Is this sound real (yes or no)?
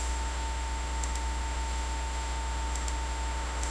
no